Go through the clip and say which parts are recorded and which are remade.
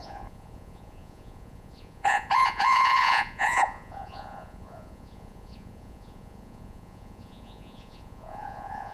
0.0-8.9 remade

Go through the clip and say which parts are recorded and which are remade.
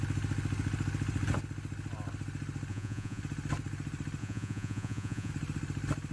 0.0-2.7 recorded; 2.7-3.2 remade; 3.2-4.2 recorded; 4.2-5.3 remade; 5.3-6.1 recorded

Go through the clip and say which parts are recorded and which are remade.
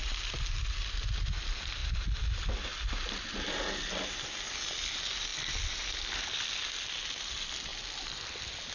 0.0-8.7 recorded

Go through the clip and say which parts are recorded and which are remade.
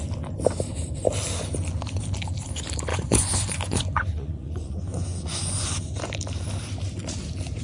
0.0-2.9 recorded; 2.9-5.8 remade; 5.8-7.6 recorded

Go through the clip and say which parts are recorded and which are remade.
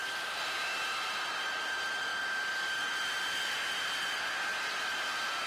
0.0-5.5 recorded